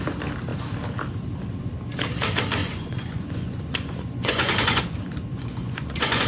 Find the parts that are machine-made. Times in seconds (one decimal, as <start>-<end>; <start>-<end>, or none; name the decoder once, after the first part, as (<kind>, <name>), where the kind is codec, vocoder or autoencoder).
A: 2.6-4.8 (vocoder, Vocos); 5.3-6.3